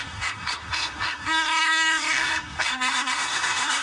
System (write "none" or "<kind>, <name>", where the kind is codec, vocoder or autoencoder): codec, SNAC